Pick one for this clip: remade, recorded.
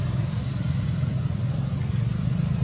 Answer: recorded